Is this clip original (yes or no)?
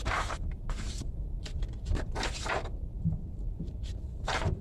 no